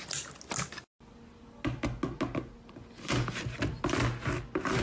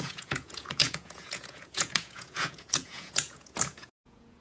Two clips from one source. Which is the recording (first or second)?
first